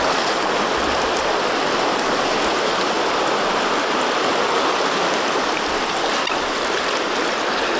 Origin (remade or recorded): recorded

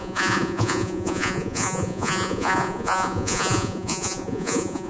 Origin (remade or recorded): remade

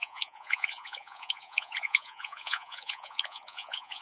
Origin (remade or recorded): remade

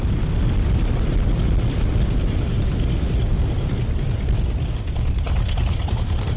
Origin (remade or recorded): recorded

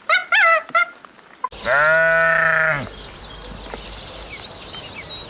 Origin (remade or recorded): recorded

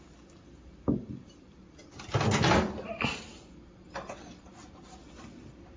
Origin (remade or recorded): recorded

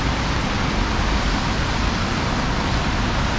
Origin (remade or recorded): recorded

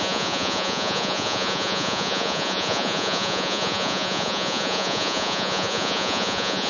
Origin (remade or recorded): remade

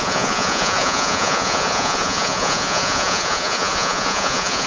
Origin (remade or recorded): remade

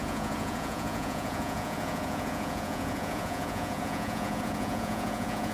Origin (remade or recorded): remade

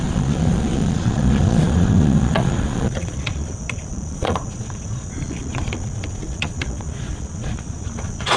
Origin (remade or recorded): remade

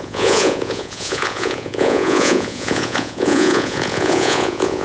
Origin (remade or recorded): remade